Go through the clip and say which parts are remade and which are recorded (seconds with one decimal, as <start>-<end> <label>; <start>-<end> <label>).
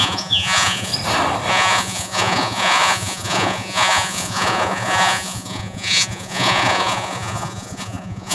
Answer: 0.0-0.9 remade; 0.9-1.5 recorded; 1.5-8.3 remade